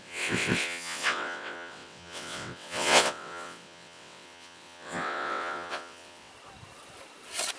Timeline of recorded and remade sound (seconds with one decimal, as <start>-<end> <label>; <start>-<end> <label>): 0.0-6.3 remade; 6.3-7.6 recorded